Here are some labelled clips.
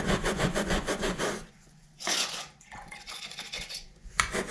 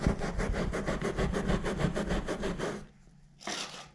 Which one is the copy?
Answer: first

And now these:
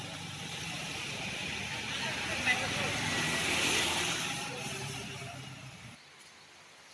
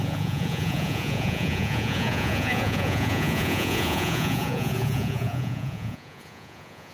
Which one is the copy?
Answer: second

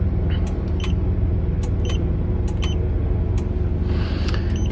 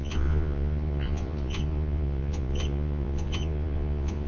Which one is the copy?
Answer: second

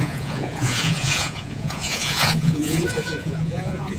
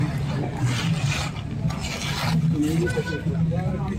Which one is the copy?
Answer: first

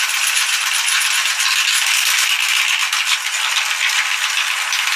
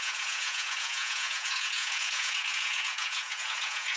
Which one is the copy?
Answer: second